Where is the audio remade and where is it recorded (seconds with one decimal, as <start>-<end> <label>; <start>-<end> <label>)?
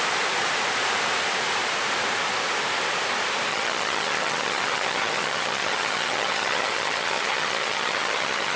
0.0-3.5 recorded; 3.5-8.6 remade